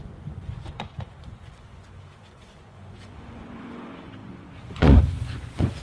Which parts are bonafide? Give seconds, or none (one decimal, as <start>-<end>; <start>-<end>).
none